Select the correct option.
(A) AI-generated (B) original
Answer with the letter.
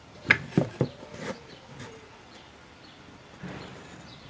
B